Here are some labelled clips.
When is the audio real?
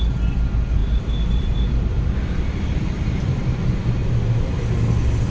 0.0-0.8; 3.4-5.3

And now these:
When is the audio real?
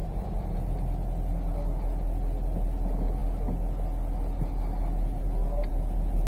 0.6-6.3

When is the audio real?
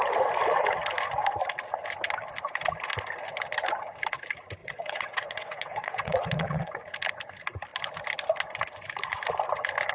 0.0-4.6; 6.8-9.9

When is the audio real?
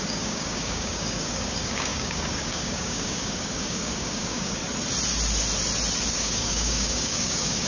4.6-6.1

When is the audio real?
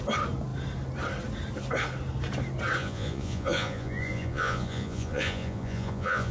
0.0-2.8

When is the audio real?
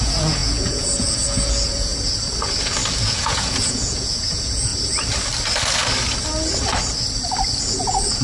1.9-3.0; 4.7-7.6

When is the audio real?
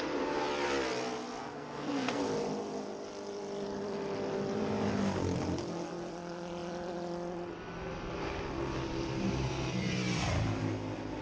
0.0-1.4; 2.2-11.2